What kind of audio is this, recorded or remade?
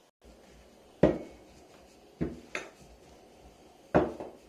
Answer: recorded